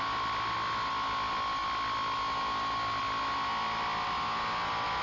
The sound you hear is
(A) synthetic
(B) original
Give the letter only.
B